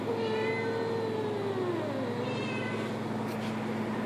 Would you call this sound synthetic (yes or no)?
no